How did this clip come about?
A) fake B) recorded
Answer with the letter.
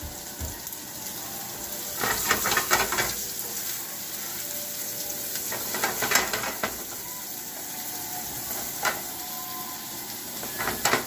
B